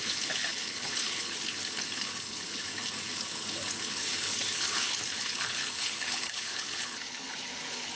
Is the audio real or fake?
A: fake